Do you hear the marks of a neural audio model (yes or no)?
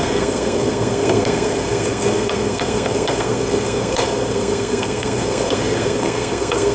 yes